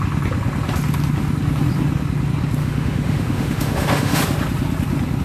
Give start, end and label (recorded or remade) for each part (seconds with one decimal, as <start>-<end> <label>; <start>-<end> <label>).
0.0-2.6 recorded; 2.6-4.2 remade; 4.2-5.2 recorded